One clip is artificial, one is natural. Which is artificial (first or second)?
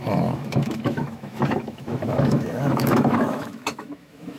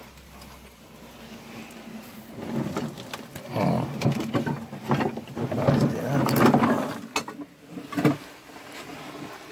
first